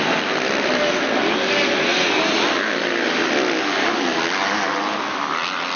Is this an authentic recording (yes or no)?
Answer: yes